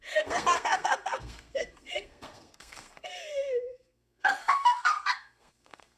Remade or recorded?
remade